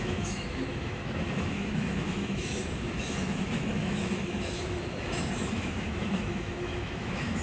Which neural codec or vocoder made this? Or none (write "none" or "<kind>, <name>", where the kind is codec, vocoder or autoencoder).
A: autoencoder, DAC-VAE